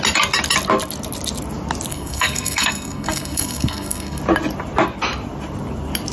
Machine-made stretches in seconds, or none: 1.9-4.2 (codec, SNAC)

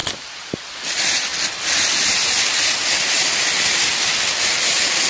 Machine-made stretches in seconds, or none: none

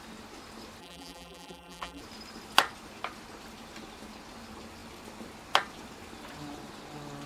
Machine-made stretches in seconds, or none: 0.8-2.0 (vocoder, BigVGAN v2)

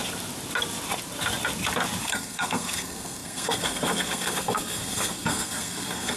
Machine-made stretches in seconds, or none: 2.0-6.2 (codec, SNAC)